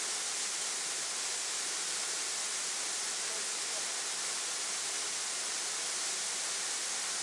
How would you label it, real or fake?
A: real